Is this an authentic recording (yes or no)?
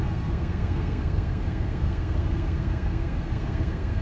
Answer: no